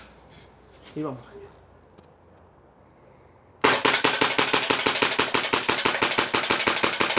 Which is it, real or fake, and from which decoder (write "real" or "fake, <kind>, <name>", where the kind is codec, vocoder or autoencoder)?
real